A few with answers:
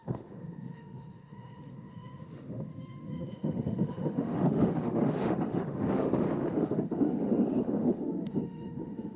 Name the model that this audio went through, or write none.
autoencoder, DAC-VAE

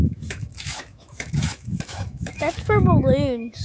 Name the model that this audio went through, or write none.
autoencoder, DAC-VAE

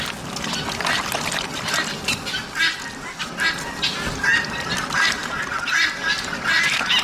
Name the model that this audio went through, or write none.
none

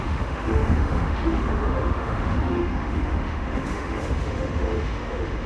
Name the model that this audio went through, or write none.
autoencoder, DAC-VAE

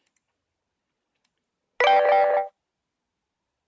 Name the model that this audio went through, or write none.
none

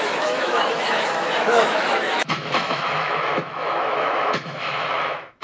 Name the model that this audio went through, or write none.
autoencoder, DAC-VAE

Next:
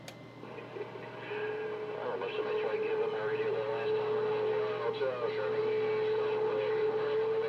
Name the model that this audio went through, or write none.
none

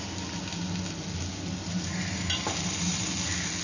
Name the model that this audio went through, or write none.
none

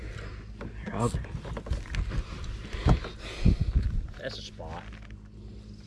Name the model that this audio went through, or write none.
none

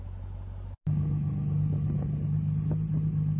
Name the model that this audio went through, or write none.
none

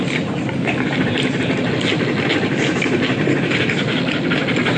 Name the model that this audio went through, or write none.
none